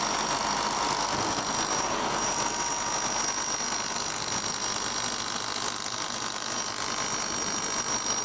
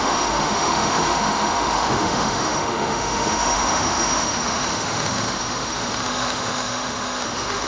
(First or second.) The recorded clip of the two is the first